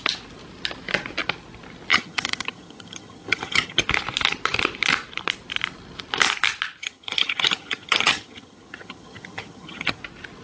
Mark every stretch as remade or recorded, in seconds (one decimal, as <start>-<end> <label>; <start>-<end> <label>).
0.0-1.9 recorded; 1.9-3.8 remade; 3.8-6.8 recorded; 6.8-10.0 remade; 10.0-10.4 recorded